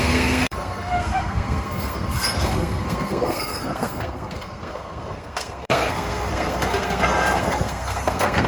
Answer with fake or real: fake